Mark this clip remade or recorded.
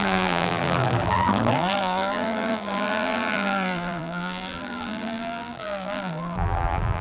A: remade